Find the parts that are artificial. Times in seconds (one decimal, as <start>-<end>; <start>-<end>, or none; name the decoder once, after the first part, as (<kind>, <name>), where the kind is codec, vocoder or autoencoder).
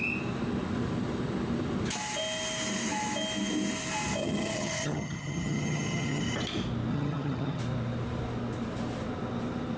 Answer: 4.2-6.2 (vocoder, HiFi-GAN); 6.9-7.6